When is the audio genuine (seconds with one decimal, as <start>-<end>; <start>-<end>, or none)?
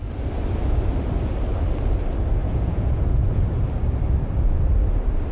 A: 0.0-2.4; 3.4-5.3